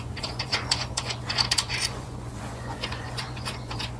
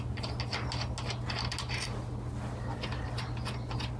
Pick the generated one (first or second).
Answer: first